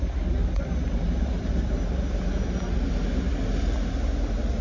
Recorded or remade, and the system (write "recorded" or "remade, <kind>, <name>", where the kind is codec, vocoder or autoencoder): recorded